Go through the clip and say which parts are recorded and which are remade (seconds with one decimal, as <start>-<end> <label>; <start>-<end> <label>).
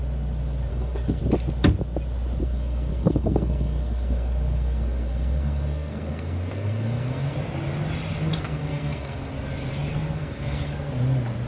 0.0-0.7 recorded; 0.7-1.2 remade; 1.2-2.4 recorded; 2.4-7.4 remade; 7.4-8.3 recorded; 8.3-9.3 remade; 9.3-9.9 recorded; 9.9-10.9 remade; 10.9-11.5 recorded